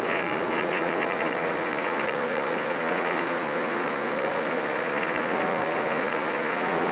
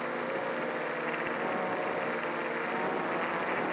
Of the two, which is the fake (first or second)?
first